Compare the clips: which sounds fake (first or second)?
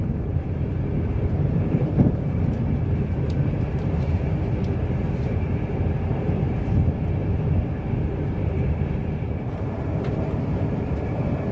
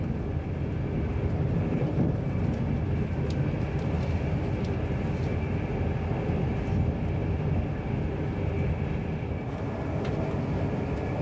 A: first